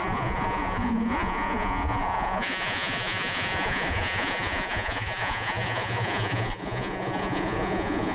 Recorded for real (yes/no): no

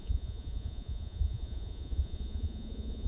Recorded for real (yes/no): no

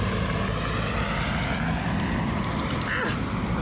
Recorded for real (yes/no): yes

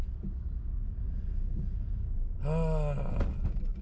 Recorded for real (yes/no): yes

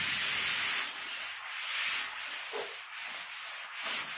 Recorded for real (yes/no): yes